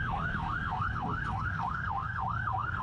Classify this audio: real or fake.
fake